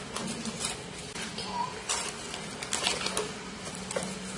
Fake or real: real